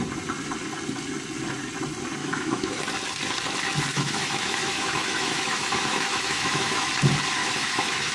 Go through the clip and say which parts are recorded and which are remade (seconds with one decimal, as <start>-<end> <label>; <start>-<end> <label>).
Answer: 0.0-2.2 recorded; 2.2-2.8 remade; 2.8-3.9 recorded; 3.9-6.9 remade; 6.9-7.4 recorded; 7.4-8.1 remade